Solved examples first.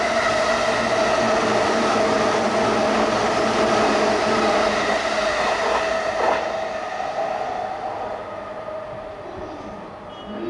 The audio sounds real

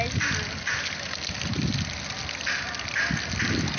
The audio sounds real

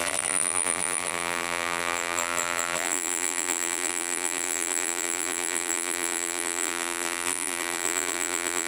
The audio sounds fake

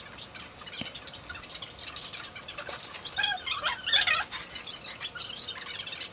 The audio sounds real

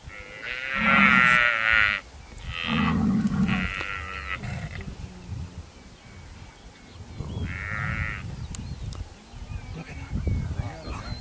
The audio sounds real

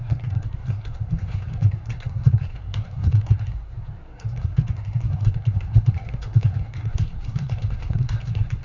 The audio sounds fake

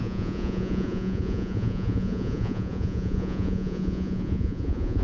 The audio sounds fake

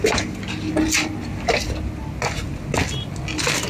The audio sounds real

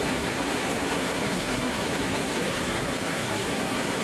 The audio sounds fake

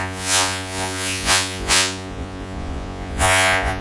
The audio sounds fake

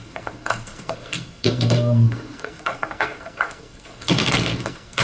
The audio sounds fake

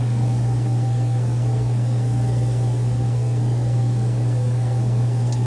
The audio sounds fake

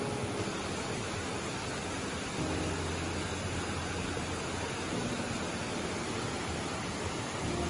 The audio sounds real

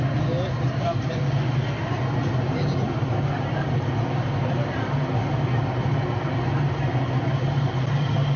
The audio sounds real